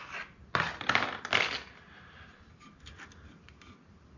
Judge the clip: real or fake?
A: real